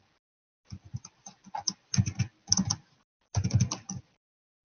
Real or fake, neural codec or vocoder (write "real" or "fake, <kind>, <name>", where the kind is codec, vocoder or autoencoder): real